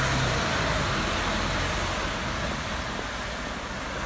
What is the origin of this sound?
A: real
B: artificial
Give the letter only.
A